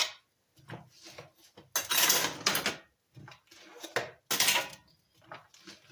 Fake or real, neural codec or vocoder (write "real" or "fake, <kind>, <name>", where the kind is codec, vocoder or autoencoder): real